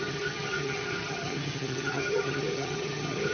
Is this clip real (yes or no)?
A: no